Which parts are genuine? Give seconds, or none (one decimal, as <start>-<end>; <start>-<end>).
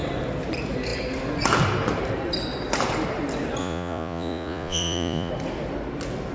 0.0-3.6; 5.3-6.3